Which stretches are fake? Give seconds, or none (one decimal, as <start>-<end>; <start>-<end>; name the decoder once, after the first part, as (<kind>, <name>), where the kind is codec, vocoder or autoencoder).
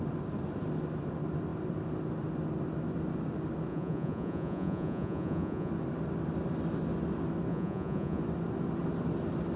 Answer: 3.7-5.7 (vocoder, Vocos); 7.5-8.2